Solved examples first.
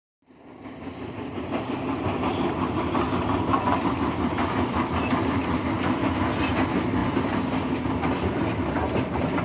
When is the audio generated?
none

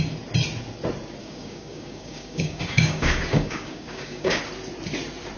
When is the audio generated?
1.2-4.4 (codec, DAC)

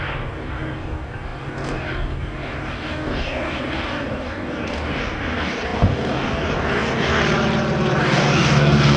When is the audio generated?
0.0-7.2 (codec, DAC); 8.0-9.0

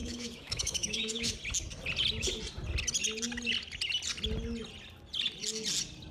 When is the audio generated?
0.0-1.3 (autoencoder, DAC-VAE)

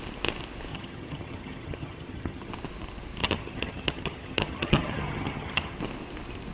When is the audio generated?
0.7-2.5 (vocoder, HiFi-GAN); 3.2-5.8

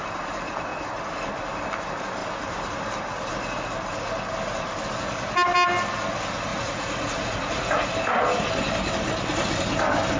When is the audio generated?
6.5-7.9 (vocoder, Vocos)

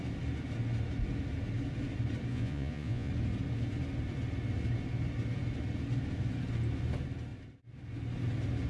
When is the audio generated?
2.3-3.1 (vocoder, Vocos)